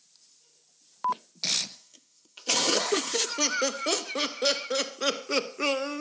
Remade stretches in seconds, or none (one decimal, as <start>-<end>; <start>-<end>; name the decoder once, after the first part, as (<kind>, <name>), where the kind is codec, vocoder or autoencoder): 1.7-3.3 (codec, SNAC)